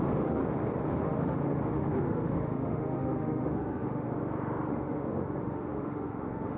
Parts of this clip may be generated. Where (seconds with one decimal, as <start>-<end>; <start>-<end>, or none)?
0.0-0.4; 0.9-4.2; 4.7-6.6